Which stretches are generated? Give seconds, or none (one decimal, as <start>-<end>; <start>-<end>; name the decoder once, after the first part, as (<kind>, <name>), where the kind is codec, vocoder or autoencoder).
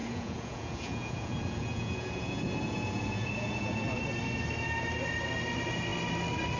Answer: 0.0-4.0 (vocoder, Vocos)